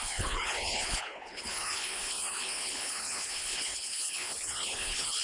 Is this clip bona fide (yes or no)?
no